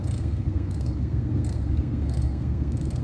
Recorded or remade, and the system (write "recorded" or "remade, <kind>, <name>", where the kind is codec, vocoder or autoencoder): remade, codec, SNAC